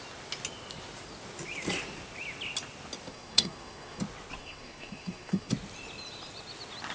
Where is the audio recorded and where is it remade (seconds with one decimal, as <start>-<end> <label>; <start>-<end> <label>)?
0.0-3.1 recorded; 3.1-4.0 remade; 4.0-4.4 recorded; 4.4-5.5 remade; 5.5-6.9 recorded